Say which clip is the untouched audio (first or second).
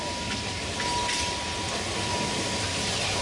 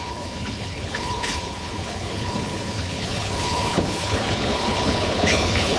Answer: first